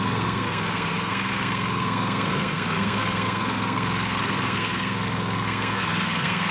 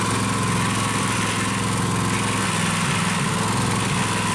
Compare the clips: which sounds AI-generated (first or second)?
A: first